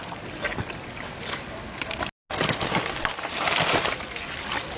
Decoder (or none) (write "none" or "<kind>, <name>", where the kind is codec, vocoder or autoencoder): none